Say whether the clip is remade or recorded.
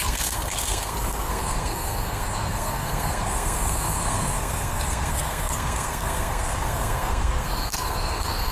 remade